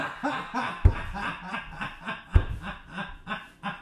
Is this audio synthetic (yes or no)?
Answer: no